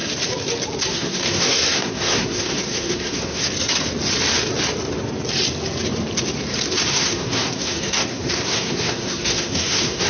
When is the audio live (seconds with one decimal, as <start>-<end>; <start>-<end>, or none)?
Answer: 0.0-0.9; 3.4-6.9